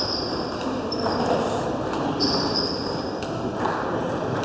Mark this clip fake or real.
fake